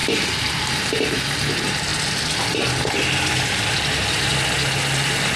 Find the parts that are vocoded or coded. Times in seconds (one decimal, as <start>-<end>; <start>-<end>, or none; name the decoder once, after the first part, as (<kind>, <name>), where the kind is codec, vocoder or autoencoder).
none